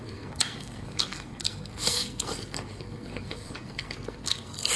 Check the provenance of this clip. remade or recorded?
remade